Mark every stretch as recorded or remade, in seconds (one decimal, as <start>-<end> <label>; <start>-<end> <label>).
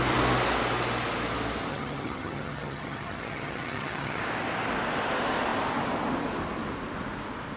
0.0-1.7 recorded; 1.7-4.2 remade; 4.2-7.6 recorded